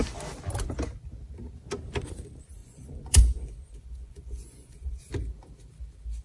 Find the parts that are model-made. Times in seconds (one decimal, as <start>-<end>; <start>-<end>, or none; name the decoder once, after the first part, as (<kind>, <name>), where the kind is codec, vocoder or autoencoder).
2.6-5.1 (vocoder, Vocos)